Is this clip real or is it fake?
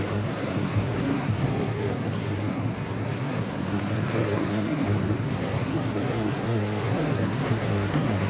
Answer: fake